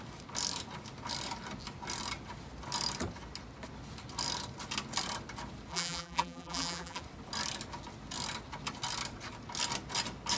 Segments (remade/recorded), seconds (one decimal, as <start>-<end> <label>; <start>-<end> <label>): 0.0-5.7 recorded; 5.7-7.0 remade; 7.0-10.4 recorded